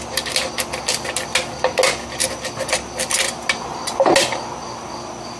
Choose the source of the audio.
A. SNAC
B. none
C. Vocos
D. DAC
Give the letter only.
B